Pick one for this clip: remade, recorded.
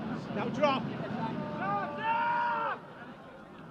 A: recorded